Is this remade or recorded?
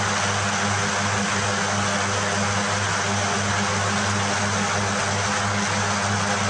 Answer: recorded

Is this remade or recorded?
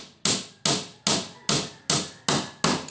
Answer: recorded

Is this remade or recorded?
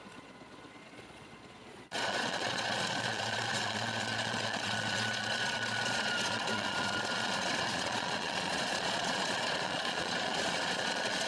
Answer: remade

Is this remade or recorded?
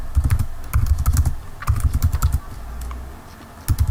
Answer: recorded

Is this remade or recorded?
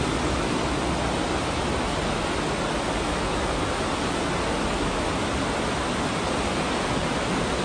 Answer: recorded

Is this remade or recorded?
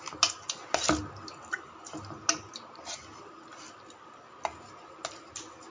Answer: recorded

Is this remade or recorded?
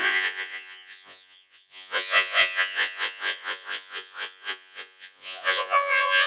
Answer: remade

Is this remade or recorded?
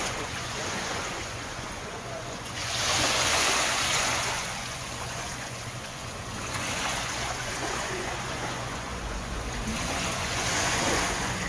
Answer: remade